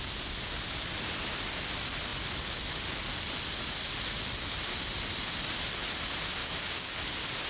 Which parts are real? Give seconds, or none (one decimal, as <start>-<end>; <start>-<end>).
0.0-6.4; 7.0-7.5